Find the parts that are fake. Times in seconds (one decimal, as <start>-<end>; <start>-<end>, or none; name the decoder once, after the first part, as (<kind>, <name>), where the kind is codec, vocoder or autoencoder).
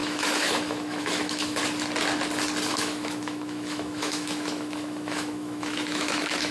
0.0-1.6 (autoencoder, DAC-VAE); 2.7-6.5